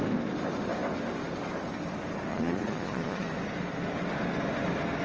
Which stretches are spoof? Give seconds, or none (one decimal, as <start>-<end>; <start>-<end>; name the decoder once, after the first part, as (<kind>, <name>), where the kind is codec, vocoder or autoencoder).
2.3-3.3 (vocoder, Vocos)